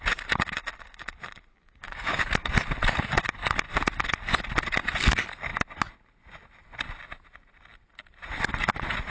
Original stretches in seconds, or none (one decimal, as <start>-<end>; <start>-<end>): 0.0-1.5; 2.5-9.1